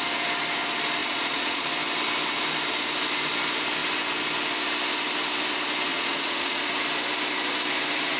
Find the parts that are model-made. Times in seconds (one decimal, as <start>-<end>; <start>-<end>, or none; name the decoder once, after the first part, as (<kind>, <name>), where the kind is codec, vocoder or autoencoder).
1.0-1.7 (vocoder, Vocos); 5.9-6.6